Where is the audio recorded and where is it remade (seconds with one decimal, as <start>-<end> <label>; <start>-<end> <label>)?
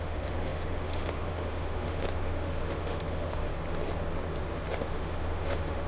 0.0-3.5 remade; 3.5-4.8 recorded; 4.8-5.9 remade